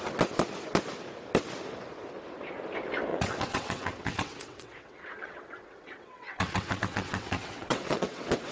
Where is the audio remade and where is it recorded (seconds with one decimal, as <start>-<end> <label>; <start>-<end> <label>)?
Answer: 0.0-3.1 recorded; 3.1-8.5 remade